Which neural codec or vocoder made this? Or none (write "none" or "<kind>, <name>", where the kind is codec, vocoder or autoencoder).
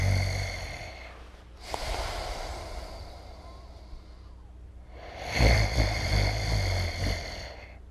none